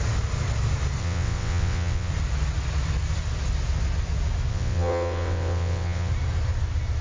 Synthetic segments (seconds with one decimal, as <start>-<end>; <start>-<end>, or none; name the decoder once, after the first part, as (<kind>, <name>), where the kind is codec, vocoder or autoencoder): 1.0-2.1 (vocoder, WaveNeXt); 4.5-6.1